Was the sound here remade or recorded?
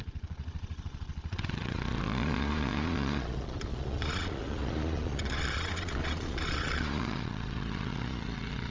remade